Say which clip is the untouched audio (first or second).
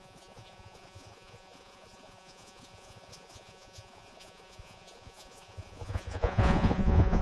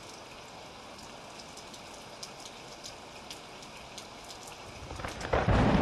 second